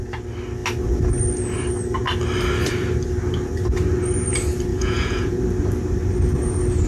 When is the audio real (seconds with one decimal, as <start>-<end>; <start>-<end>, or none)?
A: 0.0-4.7; 5.4-6.9